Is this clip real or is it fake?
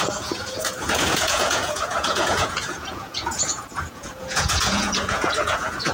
fake